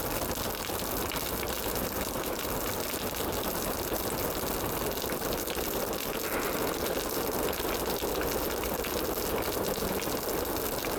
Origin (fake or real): real